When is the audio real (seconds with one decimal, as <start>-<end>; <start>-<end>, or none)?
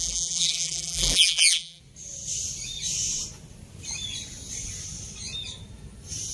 1.8-6.3